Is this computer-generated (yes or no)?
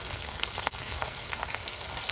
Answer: yes